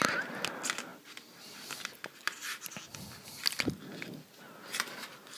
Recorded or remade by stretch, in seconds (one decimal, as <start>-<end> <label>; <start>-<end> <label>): 0.0-5.4 recorded